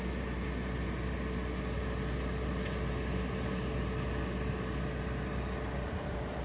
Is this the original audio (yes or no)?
yes